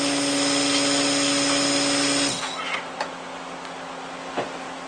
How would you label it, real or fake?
real